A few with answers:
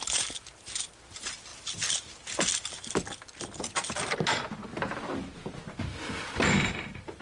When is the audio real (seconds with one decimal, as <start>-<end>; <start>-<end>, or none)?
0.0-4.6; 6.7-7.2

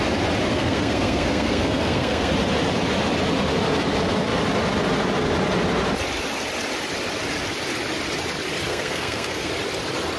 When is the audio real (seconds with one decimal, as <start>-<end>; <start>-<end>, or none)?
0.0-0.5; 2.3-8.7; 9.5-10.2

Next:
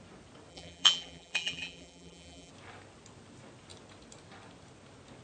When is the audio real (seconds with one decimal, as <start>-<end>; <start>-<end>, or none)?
0.0-0.5; 2.5-5.2